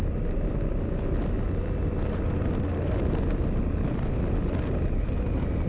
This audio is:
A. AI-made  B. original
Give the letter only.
B